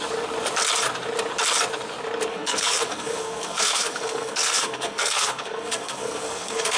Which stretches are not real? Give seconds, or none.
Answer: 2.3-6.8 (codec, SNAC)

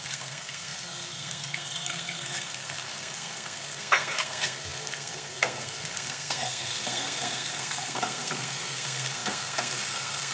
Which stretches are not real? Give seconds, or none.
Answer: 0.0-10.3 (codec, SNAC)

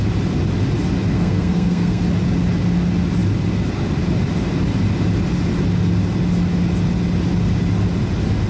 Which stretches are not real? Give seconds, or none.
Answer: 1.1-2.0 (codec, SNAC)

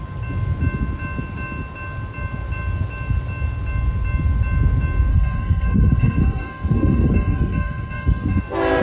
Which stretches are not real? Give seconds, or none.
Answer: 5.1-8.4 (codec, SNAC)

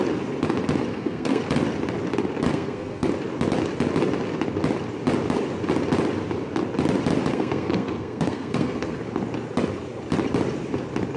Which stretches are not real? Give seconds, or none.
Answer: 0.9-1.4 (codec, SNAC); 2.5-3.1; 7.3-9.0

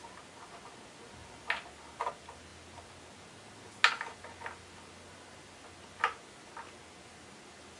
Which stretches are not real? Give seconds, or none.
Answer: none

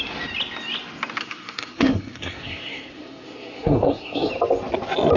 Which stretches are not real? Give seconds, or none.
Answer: 1.2-4.3 (codec, SNAC)

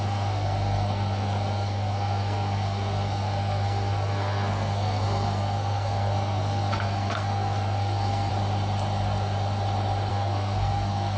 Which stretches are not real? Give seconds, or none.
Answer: 0.0-8.3 (codec, SNAC); 10.1-11.2